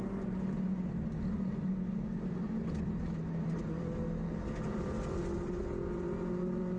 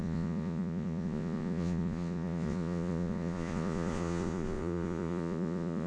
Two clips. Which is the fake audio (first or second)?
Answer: second